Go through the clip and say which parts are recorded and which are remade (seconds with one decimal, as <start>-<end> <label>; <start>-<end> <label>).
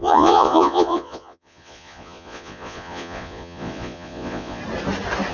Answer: 0.0-4.6 remade; 4.6-5.3 recorded